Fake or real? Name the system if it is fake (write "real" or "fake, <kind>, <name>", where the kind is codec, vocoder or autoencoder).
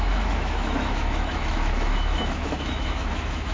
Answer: fake, autoencoder, DAC-VAE